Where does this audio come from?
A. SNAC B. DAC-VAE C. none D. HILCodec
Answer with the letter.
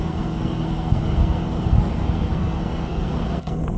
A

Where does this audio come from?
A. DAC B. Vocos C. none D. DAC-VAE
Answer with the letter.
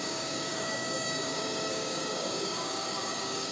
A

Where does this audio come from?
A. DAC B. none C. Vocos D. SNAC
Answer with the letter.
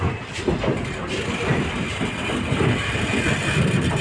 B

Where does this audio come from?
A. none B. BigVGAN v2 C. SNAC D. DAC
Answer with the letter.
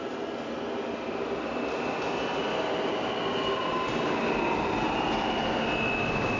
A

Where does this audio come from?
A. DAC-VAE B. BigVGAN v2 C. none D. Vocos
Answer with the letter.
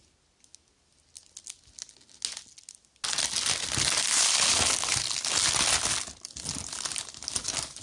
C